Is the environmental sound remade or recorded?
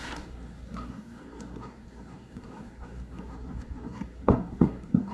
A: remade